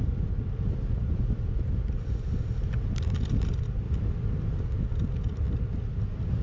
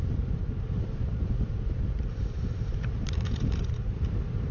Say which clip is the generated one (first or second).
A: second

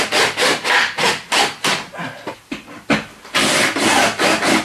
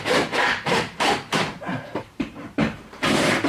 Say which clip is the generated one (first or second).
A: second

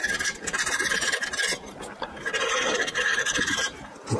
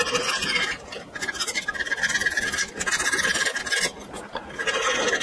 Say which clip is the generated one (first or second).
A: first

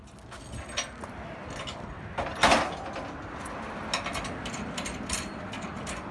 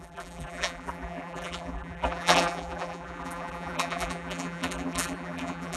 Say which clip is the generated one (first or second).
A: second